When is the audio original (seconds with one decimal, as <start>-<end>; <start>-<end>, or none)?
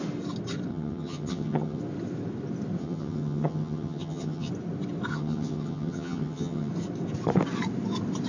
0.0-0.7; 1.8-2.8; 4.5-5.1; 6.7-8.3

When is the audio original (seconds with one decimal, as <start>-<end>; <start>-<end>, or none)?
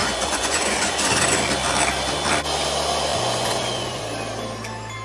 1.5-3.1; 4.0-5.0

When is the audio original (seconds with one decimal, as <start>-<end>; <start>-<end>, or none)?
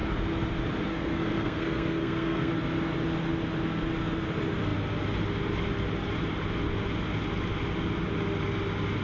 0.0-0.9; 2.5-9.0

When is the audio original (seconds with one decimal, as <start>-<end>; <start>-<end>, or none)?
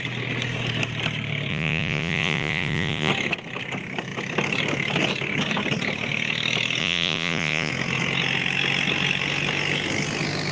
0.0-1.5; 3.1-6.8; 7.7-10.5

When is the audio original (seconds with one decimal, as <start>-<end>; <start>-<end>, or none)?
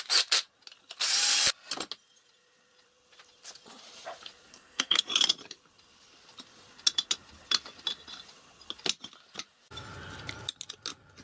0.0-4.5; 5.0-11.2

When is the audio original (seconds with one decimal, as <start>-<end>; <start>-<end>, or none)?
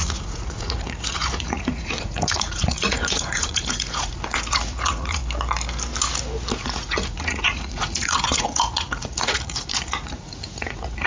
5.2-6.5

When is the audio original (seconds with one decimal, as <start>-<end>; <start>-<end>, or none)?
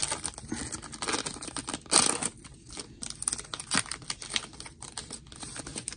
0.0-6.0